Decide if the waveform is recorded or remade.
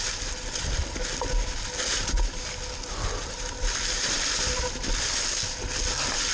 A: recorded